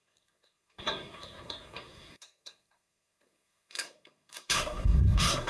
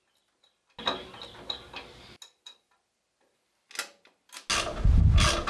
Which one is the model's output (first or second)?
first